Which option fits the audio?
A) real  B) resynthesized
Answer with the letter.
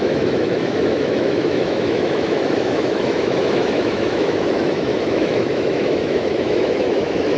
B